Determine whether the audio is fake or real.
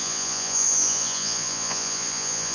fake